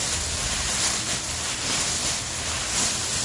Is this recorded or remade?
recorded